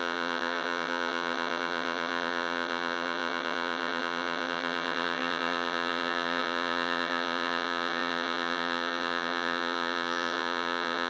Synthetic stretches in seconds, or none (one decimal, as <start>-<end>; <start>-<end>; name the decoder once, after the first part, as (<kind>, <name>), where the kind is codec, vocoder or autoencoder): 0.0-11.1 (vocoder, HiFi-GAN)

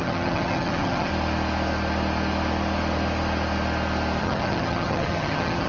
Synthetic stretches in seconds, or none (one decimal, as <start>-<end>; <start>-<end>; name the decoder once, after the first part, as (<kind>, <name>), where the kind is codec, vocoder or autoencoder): 0.0-1.1 (vocoder, HiFi-GAN); 4.2-5.7

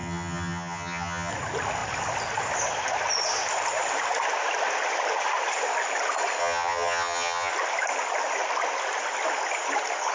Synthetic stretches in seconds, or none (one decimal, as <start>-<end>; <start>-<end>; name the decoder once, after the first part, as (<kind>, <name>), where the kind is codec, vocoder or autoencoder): 0.0-1.3 (vocoder, HiFi-GAN); 6.4-7.5

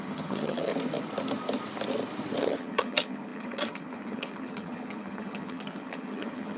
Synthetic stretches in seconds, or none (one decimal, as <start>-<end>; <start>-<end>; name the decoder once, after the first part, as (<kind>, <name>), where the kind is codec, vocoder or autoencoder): 0.0-0.7 (vocoder, HiFi-GAN); 2.4-6.6